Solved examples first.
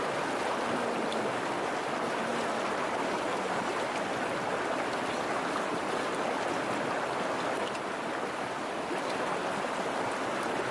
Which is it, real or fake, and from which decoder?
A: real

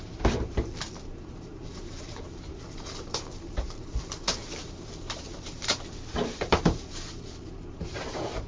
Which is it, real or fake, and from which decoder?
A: fake, vocoder, BigVGAN v2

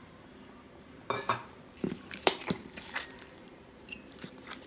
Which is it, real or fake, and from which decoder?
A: fake, vocoder, BigVGAN v2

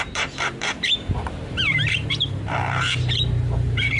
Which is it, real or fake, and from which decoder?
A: fake, vocoder, BigVGAN v2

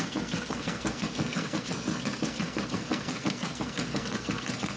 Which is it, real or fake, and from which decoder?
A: fake, codec, SNAC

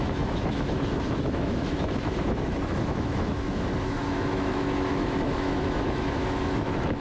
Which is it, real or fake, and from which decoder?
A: fake, autoencoder, DAC-VAE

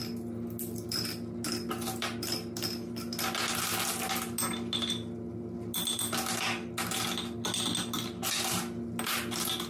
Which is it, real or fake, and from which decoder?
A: real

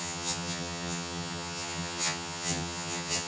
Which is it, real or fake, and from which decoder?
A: fake, vocoder, HiFi-GAN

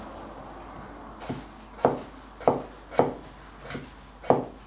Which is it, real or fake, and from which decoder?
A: real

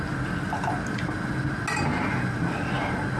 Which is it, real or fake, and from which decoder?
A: real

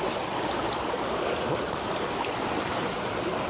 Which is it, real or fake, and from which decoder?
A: real